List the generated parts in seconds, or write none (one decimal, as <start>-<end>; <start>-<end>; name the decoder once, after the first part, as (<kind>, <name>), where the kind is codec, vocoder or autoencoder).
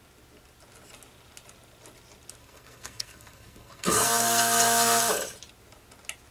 2.4-5.0 (codec, SNAC)